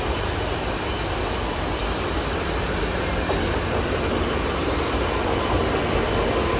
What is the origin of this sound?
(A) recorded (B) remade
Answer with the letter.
A